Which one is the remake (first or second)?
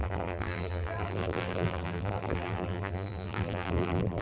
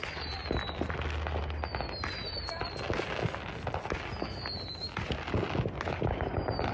first